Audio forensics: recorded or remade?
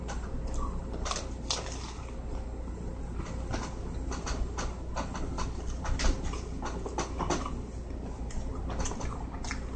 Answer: recorded